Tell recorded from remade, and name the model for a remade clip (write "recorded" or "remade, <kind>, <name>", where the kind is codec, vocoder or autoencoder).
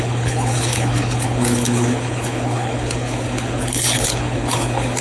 remade, codec, HILCodec